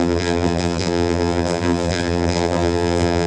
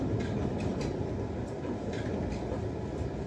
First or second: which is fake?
first